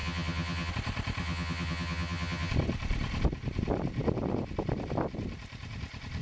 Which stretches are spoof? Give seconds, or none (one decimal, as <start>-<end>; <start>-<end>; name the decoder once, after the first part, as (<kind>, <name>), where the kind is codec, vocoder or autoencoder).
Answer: 0.0-0.7 (vocoder, HiFi-GAN); 1.2-2.5